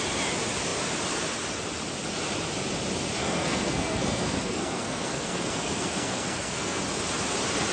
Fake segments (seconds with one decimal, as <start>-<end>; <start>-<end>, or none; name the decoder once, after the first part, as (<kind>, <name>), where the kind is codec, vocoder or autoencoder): 3.2-6.8 (codec, SNAC)